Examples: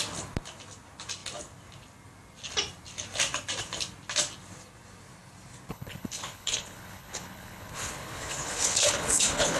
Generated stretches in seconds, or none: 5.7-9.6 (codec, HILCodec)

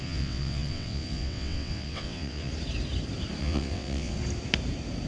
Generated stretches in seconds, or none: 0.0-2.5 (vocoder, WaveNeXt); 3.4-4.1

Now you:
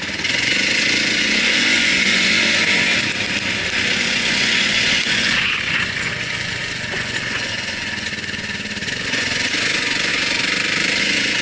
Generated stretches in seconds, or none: 0.0-2.9 (vocoder, Vocos); 4.0-10.1; 11.0-11.4

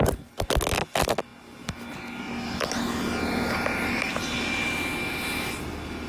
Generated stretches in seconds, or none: none